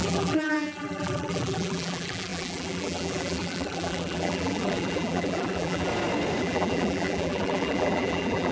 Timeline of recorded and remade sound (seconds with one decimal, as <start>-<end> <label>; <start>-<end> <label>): 0.0-5.9 remade; 5.9-6.4 recorded; 6.4-8.5 remade